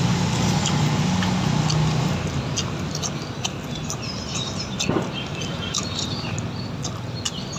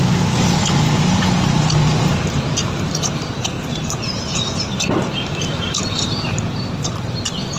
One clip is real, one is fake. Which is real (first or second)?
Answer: first